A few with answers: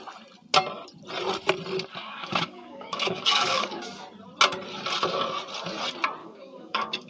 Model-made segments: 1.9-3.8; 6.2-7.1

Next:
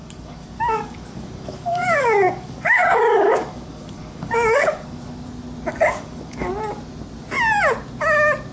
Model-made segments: 0.0-5.0; 5.7-6.5

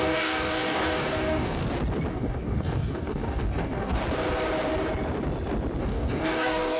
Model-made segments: 0.0-1.6; 2.1-4.0; 5.8-6.8

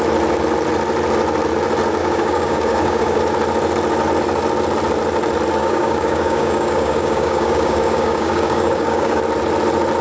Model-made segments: 2.0-3.2; 5.6-9.2

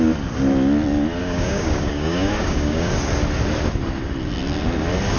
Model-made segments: 1.2-2.9